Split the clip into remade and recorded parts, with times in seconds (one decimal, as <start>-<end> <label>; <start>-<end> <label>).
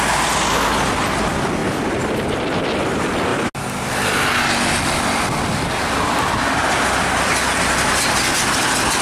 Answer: 0.0-9.0 recorded